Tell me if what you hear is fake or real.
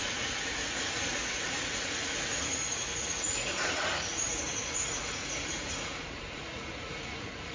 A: fake